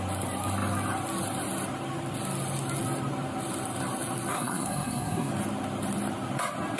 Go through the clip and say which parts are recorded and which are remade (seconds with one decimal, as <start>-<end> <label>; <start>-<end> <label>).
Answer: 0.0-4.3 recorded; 4.3-5.3 remade; 5.3-6.8 recorded